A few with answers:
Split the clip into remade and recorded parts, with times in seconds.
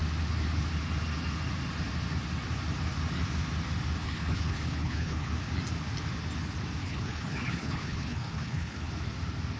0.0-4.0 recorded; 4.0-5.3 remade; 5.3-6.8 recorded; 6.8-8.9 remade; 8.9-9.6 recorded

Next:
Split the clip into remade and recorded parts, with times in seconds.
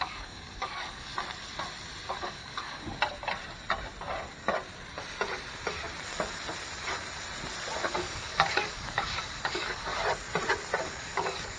0.0-1.1 remade; 1.1-2.1 recorded; 2.1-2.9 remade; 2.9-7.9 recorded; 7.9-9.9 remade; 9.9-10.8 recorded; 10.8-11.6 remade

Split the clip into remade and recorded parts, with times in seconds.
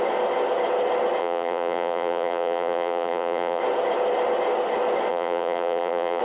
0.0-1.2 recorded; 1.2-3.6 remade; 3.6-5.1 recorded; 5.1-6.2 remade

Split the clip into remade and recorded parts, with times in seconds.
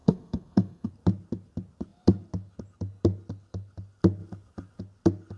0.0-0.9 remade; 0.9-5.4 recorded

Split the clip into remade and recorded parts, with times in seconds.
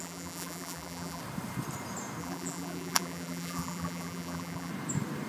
0.0-1.2 remade; 1.2-2.2 recorded; 2.2-4.7 remade; 4.7-5.3 recorded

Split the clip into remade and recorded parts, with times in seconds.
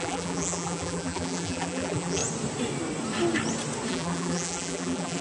0.0-2.2 remade; 2.2-3.9 recorded; 3.9-5.2 remade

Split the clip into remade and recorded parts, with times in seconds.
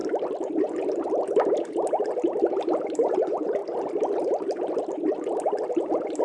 0.0-3.1 recorded; 3.1-3.6 remade; 3.6-6.2 recorded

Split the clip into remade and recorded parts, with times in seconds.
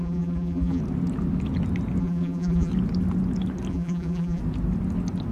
0.0-0.8 remade; 0.8-2.0 recorded; 2.0-2.7 remade; 2.7-3.7 recorded; 3.7-4.4 remade; 4.4-5.3 recorded